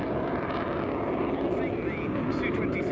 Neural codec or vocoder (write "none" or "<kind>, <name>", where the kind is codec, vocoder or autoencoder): none